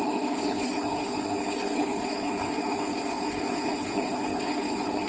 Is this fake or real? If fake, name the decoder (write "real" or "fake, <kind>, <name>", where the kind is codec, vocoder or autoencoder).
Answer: fake, codec, HILCodec